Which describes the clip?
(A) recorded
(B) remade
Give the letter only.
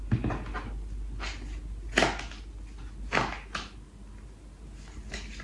A